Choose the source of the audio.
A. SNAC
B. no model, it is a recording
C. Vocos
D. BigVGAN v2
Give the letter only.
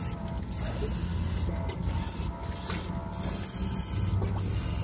B